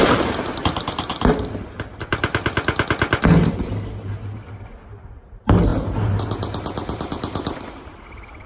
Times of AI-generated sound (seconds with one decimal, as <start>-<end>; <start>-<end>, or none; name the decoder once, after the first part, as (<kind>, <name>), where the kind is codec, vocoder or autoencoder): none